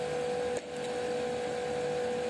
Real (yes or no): yes